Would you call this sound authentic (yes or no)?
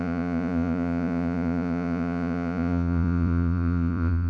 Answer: no